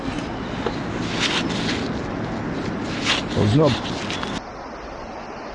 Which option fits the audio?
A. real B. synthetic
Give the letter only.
A